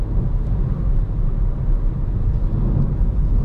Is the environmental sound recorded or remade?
recorded